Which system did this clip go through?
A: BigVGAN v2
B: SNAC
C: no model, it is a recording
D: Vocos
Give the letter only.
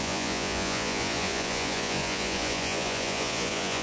D